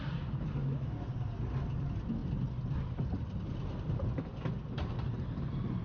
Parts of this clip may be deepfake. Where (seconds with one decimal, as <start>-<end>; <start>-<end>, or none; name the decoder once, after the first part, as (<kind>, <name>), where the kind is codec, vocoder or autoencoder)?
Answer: 0.6-1.1 (autoencoder, DAC-VAE)